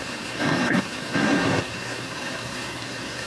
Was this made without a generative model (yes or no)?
no